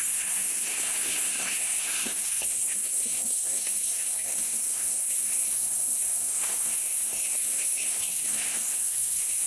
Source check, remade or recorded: remade